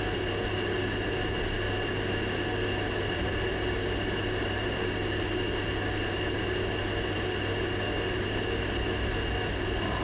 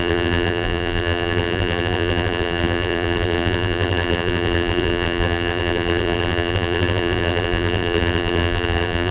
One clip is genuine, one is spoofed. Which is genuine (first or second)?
first